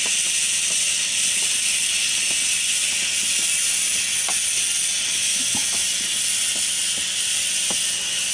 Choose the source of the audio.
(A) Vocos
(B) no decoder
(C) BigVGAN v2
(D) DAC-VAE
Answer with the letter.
B